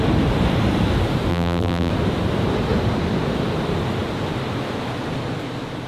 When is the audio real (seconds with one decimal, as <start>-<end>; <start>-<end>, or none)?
0.0-1.3; 1.9-5.9